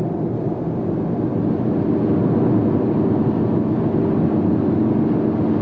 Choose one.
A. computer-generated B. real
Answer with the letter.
B